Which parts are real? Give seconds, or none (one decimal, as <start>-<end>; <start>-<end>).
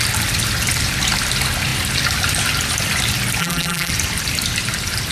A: 0.0-3.4; 3.9-5.1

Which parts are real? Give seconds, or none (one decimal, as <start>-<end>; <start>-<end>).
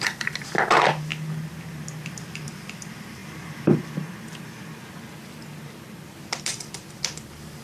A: 1.1-2.1; 3.2-6.4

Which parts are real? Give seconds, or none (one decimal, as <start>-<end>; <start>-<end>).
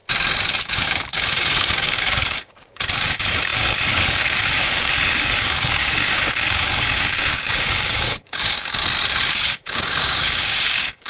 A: 0.0-0.6; 8.8-9.3